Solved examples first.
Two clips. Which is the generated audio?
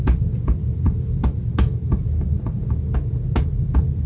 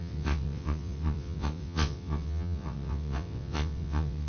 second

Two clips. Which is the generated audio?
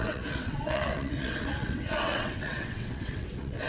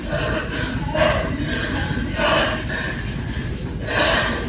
first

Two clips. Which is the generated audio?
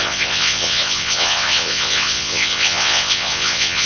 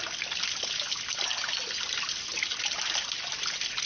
first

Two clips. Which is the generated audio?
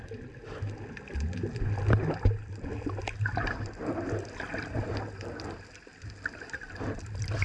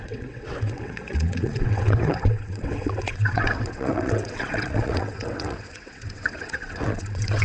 second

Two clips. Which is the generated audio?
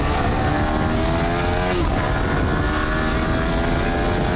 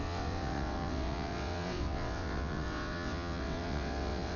second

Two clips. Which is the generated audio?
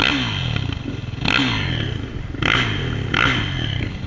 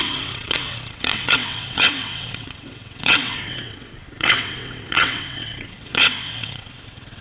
second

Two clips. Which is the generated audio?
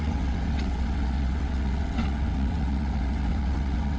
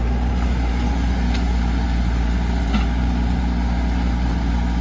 first